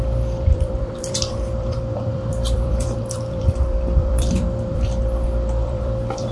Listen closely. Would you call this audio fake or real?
fake